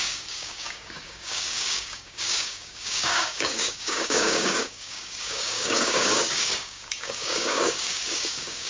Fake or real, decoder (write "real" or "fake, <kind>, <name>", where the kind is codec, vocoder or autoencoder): fake, codec, DAC